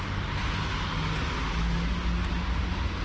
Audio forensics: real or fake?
real